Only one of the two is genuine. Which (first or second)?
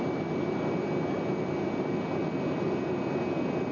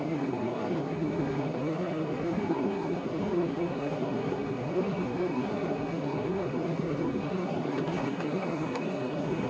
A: first